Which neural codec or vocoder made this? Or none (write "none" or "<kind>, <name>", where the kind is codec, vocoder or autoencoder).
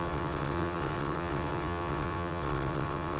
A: vocoder, WaveNeXt